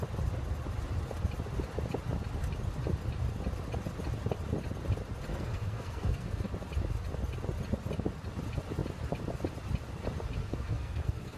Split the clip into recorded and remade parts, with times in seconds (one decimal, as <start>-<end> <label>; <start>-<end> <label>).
0.0-5.3 recorded; 5.3-6.4 remade; 6.4-10.4 recorded; 10.4-11.4 remade

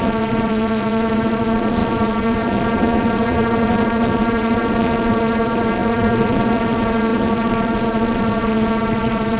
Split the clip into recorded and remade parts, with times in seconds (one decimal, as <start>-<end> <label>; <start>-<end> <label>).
0.0-9.4 remade

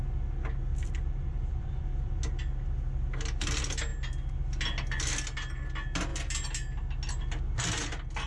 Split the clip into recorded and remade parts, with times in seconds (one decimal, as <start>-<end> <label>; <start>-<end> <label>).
0.0-0.7 recorded; 0.7-2.1 remade; 2.1-8.3 recorded